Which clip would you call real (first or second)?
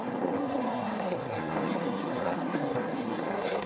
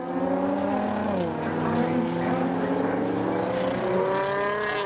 second